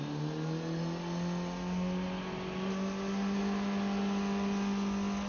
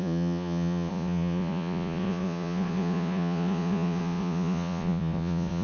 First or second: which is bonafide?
first